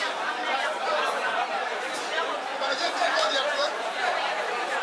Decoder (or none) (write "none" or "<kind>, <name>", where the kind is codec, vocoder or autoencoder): vocoder, BigVGAN v2